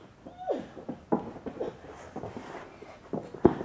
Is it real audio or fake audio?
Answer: real